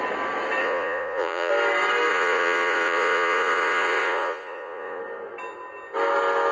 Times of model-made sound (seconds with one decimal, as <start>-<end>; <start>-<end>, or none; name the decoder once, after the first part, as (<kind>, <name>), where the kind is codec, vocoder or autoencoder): 0.6-1.5 (vocoder, Vocos); 2.1-5.0